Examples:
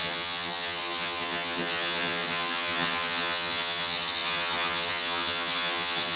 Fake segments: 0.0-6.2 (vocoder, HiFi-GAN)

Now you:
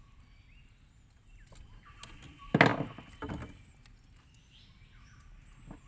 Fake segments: none

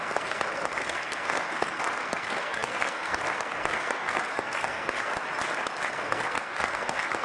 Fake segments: 0.0-5.1 (codec, SNAC); 5.9-7.2

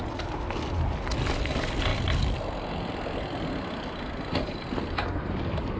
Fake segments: none

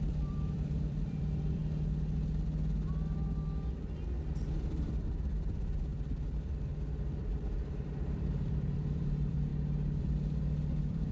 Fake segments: 0.0-1.6 (vocoder, BigVGAN v2); 4.5-5.9; 7.1-9.5; 10.0-11.1

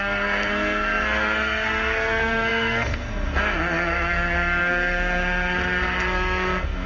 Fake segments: 0.0-6.9 (codec, SNAC)